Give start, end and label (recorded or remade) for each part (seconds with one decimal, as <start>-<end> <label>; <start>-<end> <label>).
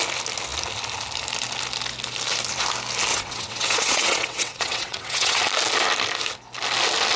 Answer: 0.0-3.1 recorded; 3.1-5.4 remade; 5.4-7.2 recorded